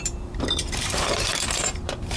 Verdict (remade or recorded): remade